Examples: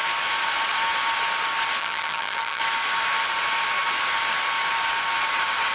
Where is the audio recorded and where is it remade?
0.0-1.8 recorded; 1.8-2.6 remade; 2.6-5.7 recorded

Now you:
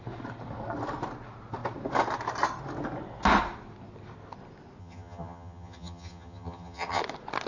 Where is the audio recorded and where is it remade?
0.0-4.8 recorded; 4.8-7.0 remade; 7.0-7.5 recorded

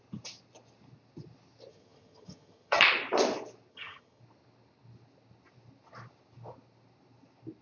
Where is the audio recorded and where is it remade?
0.0-1.7 recorded; 1.7-2.8 remade; 2.8-3.7 recorded; 3.7-4.2 remade; 4.2-7.6 recorded

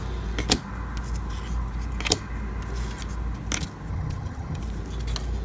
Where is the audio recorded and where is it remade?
0.0-3.9 recorded; 3.9-4.6 remade; 4.6-5.4 recorded

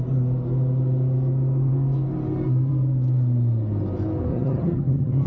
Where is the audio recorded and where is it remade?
0.0-4.3 recorded; 4.3-5.3 remade

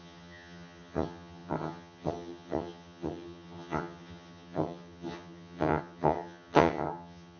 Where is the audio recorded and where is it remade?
0.0-7.4 remade